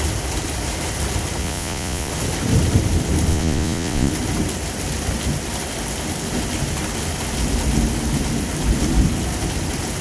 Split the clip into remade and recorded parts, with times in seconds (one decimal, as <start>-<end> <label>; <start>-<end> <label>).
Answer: 0.0-1.4 recorded; 1.4-2.1 remade; 2.1-3.3 recorded; 3.3-4.1 remade; 4.1-10.0 recorded

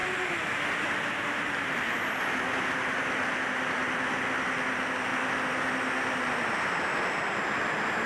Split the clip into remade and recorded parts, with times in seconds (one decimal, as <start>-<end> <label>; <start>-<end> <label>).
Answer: 0.0-8.1 recorded

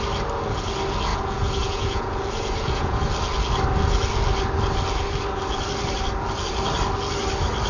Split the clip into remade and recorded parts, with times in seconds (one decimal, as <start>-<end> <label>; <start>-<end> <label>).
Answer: 0.0-1.1 recorded; 1.1-3.0 remade; 3.0-7.7 recorded

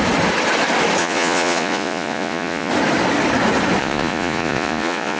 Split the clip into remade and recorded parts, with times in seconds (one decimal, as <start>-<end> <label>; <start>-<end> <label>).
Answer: 0.0-1.0 recorded; 1.0-2.7 remade; 2.7-3.8 recorded; 3.8-5.2 remade

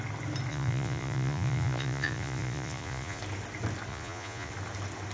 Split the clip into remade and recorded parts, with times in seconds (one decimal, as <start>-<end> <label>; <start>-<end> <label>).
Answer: 0.0-0.5 recorded; 0.5-3.2 remade; 3.2-3.9 recorded; 3.9-4.5 remade; 4.5-5.1 recorded

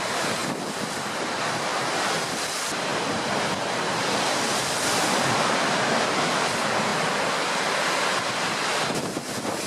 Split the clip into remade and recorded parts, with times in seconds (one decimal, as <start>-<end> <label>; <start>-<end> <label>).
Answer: 0.0-0.4 remade; 0.4-0.9 recorded; 0.9-1.7 remade; 1.7-2.3 recorded; 2.3-6.9 remade; 6.9-9.0 recorded; 9.0-9.7 remade